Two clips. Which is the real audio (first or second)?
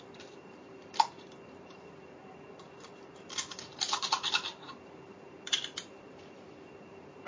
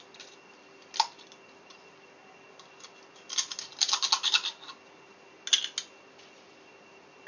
second